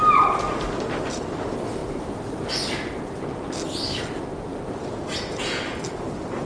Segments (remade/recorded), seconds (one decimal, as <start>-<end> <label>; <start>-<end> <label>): 0.0-6.4 recorded